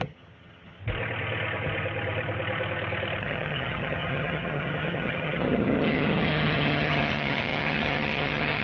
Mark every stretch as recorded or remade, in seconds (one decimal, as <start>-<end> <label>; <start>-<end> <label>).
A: 0.0-0.8 remade; 0.8-3.2 recorded; 3.2-8.6 remade